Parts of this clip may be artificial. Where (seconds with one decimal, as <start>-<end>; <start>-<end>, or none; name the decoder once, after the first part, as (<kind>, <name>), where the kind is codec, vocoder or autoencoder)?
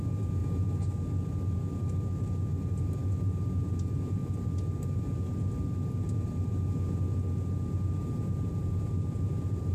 2.5-3.1 (vocoder, BigVGAN v2); 8.0-9.7